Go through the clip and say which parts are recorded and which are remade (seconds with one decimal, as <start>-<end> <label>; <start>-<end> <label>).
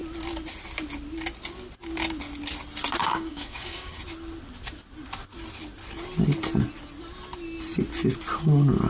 0.0-3.0 recorded; 3.0-4.0 remade; 4.0-8.9 recorded